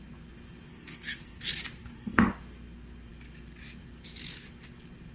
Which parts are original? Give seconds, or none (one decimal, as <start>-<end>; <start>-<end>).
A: 0.0-0.7; 1.4-1.8; 2.3-5.1